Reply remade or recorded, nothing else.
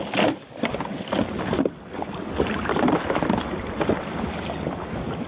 recorded